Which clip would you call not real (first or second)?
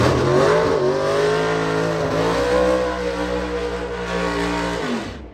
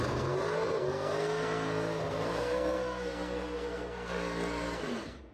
second